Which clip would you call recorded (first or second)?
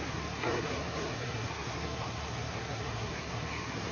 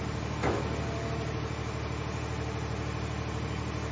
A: second